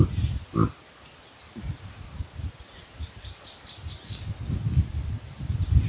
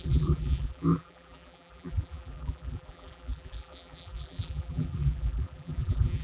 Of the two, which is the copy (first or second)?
second